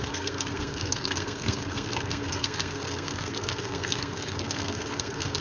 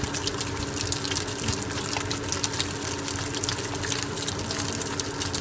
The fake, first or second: first